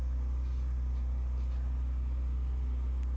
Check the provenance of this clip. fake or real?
real